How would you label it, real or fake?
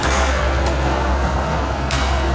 fake